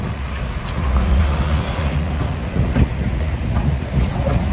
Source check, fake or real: fake